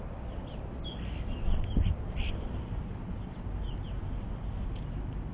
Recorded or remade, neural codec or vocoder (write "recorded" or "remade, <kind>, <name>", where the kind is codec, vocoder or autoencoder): recorded